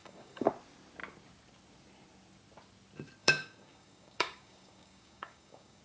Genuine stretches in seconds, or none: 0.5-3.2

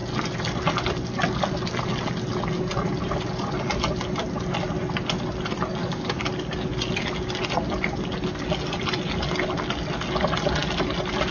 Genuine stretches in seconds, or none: 0.0-5.8; 6.3-11.3

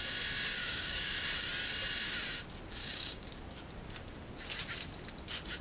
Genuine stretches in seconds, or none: 0.0-0.6; 1.2-2.8; 3.3-5.6

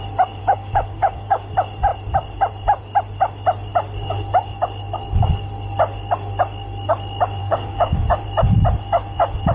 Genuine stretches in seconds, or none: 0.0-0.4; 1.5-7.4; 8.2-9.5

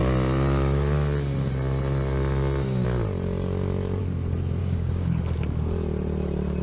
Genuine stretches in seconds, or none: 0.0-4.6; 5.2-6.6

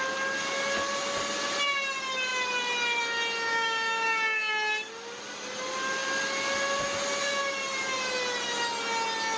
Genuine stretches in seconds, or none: 0.0-3.5; 4.5-9.4

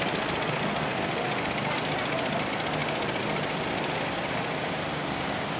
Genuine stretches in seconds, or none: 0.0-4.9